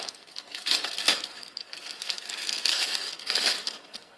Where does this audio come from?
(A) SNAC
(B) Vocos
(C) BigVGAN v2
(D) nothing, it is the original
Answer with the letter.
A